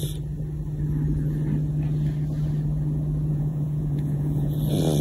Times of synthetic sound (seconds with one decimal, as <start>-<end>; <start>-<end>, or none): 3.3-4.5